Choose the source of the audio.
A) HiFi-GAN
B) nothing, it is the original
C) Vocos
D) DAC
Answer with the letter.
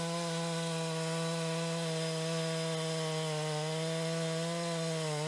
B